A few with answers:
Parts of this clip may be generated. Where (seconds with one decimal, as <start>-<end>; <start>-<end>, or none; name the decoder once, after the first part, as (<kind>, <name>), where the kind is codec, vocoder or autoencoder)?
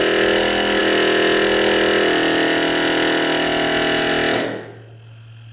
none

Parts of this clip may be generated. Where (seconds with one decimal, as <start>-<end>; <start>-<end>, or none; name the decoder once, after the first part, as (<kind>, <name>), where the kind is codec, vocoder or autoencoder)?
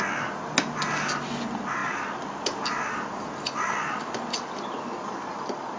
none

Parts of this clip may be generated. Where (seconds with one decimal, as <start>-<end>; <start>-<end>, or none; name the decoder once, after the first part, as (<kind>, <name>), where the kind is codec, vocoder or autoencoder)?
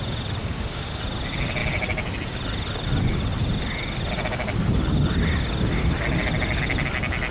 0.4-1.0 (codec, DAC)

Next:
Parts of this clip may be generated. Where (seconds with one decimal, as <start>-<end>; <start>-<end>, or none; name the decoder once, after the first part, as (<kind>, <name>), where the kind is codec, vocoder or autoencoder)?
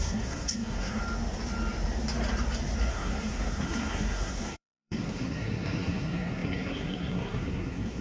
0.0-1.0 (codec, SNAC); 2.9-8.0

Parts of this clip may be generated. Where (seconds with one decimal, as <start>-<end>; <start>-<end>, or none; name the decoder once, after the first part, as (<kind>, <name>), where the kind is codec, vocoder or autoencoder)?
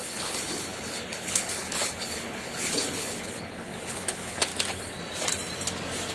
0.0-4.5 (codec, HILCodec)